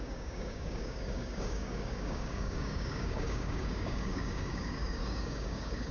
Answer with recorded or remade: remade